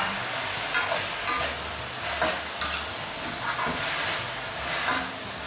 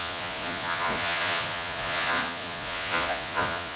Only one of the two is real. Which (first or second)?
first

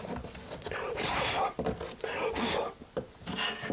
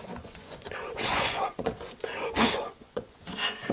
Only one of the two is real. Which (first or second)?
first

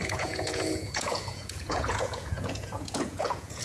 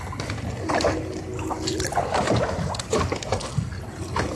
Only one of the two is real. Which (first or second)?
second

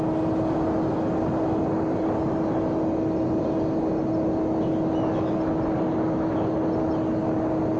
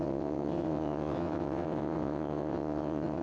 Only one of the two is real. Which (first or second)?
first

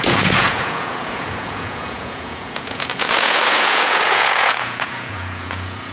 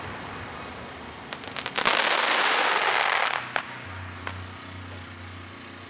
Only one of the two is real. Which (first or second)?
second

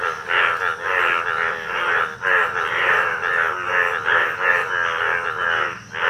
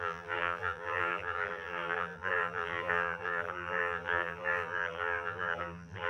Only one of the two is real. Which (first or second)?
first